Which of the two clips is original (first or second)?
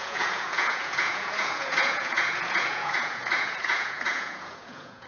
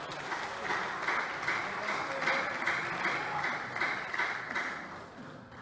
second